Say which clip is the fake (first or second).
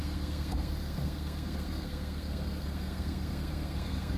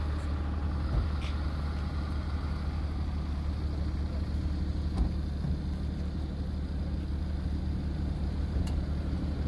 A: first